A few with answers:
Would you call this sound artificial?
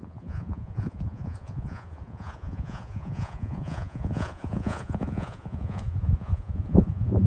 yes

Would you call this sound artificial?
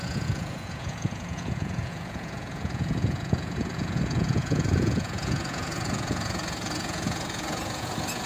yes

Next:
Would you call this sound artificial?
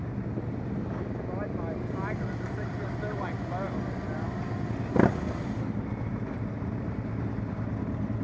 no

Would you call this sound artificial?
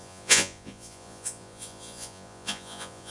yes